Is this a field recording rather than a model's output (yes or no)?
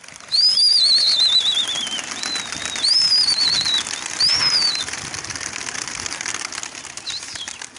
yes